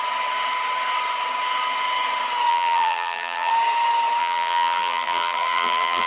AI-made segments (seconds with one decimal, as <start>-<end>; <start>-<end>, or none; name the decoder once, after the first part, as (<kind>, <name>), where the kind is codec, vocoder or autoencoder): 2.5-3.5 (vocoder, BigVGAN v2); 4.2-6.1